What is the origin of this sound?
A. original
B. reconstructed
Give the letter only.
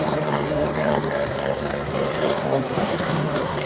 B